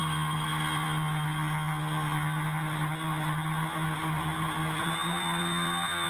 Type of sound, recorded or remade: recorded